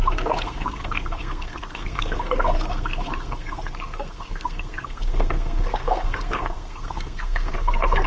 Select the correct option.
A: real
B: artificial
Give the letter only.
B